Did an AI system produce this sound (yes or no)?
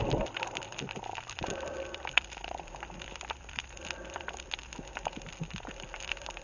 yes